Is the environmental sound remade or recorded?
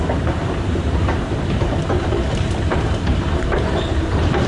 remade